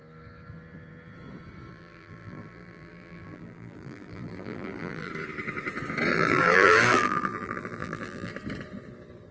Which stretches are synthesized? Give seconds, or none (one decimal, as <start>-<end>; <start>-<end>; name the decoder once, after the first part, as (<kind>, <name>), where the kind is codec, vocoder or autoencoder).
1.7-5.1 (vocoder, BigVGAN v2); 6.1-8.3